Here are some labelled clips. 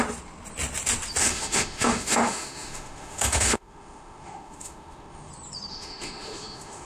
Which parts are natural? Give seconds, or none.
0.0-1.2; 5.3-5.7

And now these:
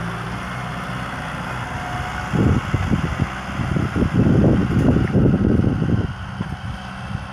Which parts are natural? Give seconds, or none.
0.0-7.3

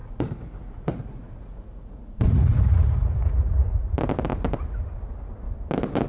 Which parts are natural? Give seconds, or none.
3.7-6.1

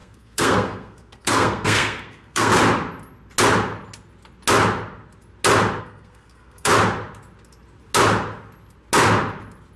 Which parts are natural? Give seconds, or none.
2.5-5.8; 6.7-9.8

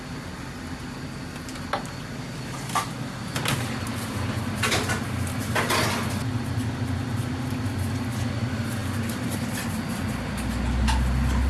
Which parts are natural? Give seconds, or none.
0.0-11.5